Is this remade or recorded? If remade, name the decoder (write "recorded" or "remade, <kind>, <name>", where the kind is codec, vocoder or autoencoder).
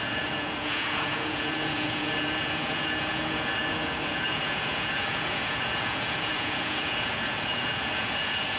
remade, vocoder, Vocos